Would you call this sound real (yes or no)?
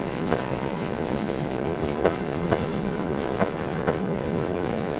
no